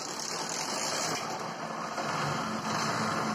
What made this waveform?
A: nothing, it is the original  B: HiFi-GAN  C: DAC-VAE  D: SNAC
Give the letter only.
A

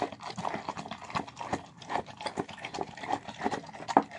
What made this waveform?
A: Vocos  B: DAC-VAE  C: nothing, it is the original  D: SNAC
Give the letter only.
C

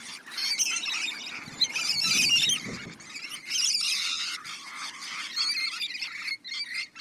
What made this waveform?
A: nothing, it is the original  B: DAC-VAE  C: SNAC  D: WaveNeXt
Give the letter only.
A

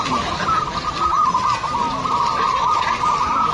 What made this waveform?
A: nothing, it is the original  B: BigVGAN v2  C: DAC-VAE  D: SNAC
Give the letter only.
A